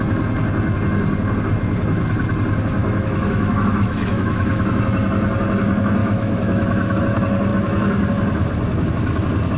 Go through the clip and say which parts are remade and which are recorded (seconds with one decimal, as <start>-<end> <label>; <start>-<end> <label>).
0.0-2.8 recorded; 2.8-4.8 remade; 4.8-6.0 recorded; 6.0-7.0 remade; 7.0-9.6 recorded